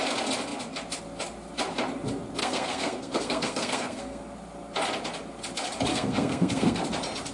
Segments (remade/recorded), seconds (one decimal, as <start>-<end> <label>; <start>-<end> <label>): 0.0-2.4 recorded; 2.4-4.2 remade; 4.2-5.9 recorded; 5.9-6.8 remade; 6.8-7.3 recorded